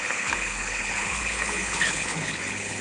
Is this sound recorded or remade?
remade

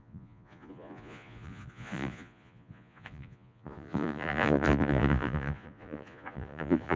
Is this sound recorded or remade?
remade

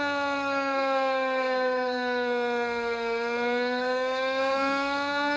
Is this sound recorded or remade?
remade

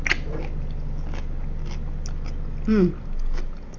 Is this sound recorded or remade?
recorded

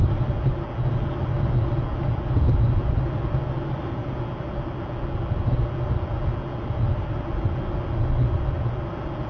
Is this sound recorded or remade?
recorded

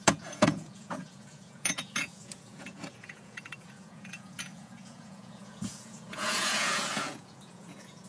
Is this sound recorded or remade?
remade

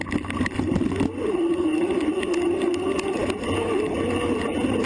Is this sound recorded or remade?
recorded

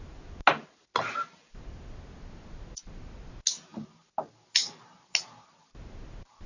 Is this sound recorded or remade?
recorded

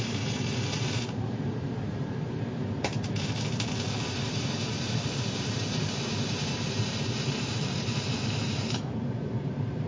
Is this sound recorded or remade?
remade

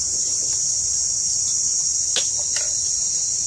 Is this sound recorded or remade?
recorded